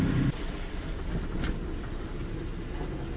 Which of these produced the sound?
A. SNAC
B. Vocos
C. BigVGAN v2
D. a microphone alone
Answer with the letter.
D